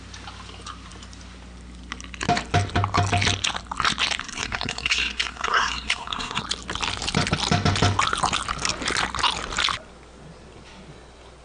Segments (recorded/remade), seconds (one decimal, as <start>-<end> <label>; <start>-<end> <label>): 0.0-4.2 recorded; 4.2-6.4 remade; 6.4-11.4 recorded